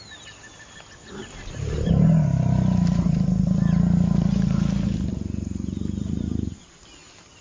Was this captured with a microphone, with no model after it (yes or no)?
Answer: yes